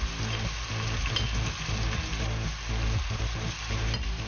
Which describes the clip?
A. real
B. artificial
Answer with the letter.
A